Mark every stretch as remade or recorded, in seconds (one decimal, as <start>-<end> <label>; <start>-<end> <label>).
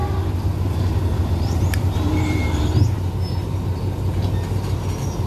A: 0.0-1.3 recorded; 1.3-5.3 remade